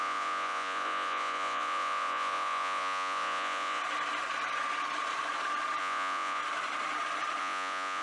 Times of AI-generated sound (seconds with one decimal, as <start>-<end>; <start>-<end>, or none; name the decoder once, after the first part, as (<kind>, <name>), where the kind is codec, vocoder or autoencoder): 0.0-3.8 (vocoder, Vocos); 5.8-6.4; 7.4-8.0